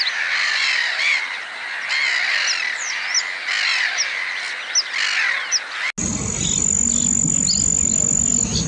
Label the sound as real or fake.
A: real